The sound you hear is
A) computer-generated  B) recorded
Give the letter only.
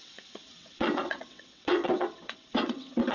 A